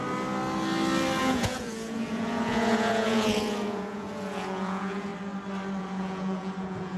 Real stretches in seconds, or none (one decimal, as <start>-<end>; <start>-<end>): 0.0-1.2; 5.1-5.8